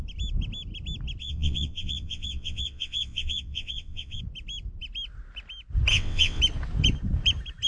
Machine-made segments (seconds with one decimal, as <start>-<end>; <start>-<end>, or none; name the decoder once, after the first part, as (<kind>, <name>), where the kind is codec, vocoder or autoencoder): 1.2-4.2 (vocoder, WaveNeXt); 5.9-6.4